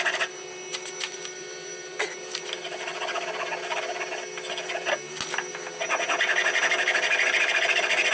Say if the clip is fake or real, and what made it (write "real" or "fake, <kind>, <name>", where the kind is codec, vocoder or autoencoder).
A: real